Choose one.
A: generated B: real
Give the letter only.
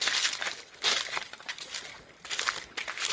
B